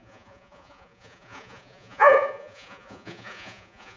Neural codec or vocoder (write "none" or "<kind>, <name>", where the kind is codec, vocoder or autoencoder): vocoder, Vocos